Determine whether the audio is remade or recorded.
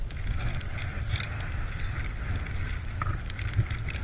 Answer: recorded